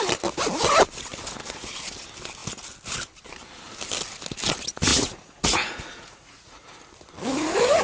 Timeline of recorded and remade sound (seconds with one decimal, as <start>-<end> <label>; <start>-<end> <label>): 0.0-4.9 recorded; 4.9-6.8 remade; 6.8-7.8 recorded